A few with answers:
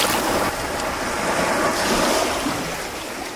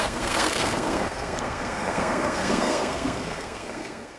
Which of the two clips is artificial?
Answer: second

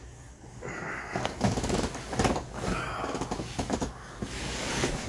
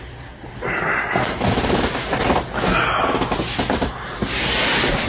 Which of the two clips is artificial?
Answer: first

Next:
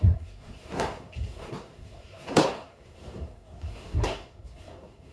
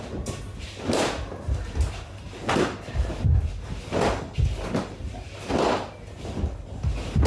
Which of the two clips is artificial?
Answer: first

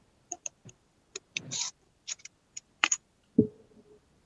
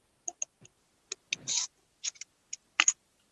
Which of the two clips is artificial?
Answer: first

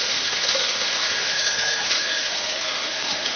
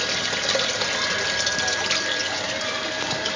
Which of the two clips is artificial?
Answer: first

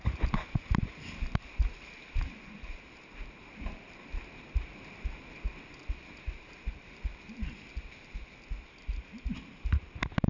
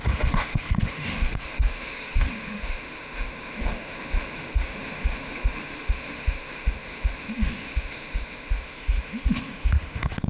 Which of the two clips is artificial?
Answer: second